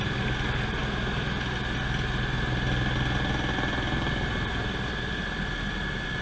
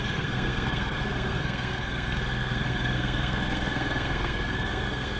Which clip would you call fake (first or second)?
second